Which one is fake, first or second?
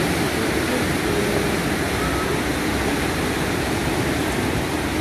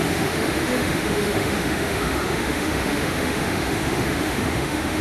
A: second